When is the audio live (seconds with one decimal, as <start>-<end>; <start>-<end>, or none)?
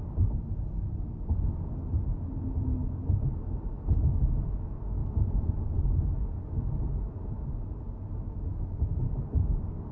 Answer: 0.0-5.0; 6.0-9.9